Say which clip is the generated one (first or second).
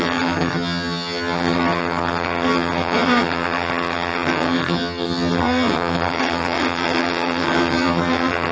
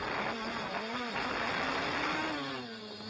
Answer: first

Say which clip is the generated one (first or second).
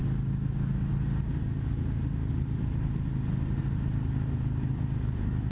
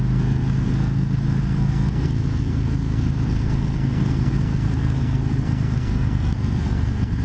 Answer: second